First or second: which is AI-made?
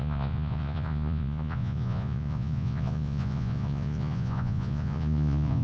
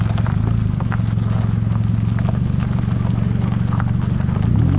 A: first